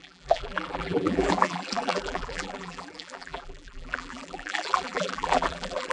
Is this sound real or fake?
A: fake